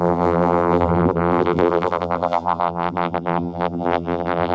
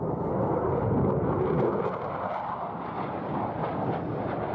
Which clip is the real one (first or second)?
second